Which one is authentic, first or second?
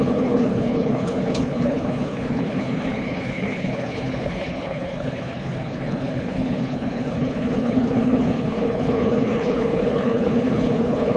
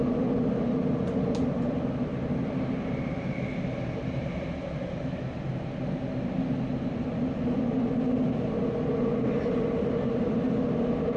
second